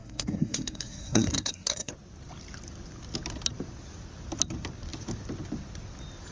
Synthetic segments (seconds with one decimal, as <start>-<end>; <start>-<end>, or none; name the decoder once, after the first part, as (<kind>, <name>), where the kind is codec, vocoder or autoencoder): 0.0-1.9 (codec, SNAC)

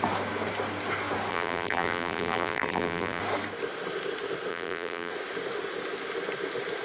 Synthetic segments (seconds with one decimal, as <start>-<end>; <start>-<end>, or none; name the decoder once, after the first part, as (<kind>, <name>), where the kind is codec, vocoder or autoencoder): 1.3-3.2 (vocoder, BigVGAN v2); 4.5-5.1

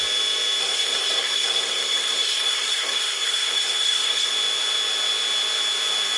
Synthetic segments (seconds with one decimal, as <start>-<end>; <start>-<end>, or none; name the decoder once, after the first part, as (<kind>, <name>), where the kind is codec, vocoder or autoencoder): 0.6-4.3 (codec, SNAC)